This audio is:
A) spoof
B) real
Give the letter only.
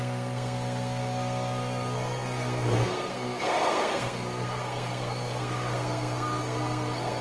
A